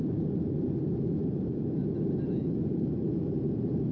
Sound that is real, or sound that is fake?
fake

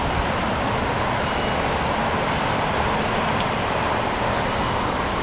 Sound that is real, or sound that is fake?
fake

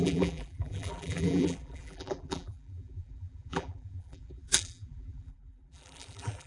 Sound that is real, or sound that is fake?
fake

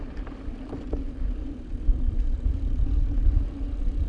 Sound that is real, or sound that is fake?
fake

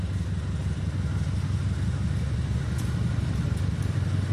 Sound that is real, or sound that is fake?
real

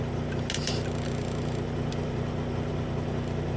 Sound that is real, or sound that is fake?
real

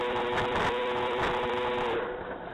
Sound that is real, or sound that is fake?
fake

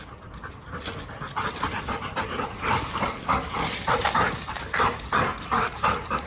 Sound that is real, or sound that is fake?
fake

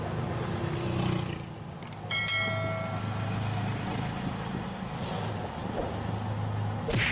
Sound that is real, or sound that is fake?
real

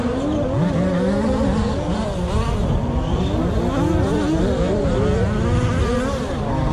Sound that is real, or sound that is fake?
real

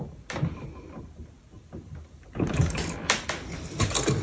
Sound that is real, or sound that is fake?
real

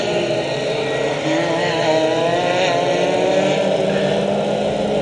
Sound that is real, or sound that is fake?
real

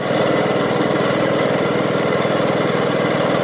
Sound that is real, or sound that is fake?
fake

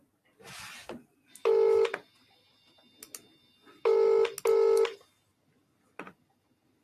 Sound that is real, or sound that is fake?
real